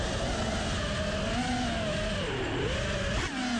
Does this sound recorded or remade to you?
recorded